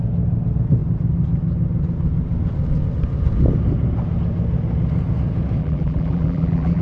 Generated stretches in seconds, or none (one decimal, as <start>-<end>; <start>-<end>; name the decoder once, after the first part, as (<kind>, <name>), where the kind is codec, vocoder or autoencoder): 5.6-6.8 (vocoder, BigVGAN v2)